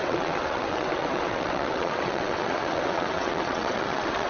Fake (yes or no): yes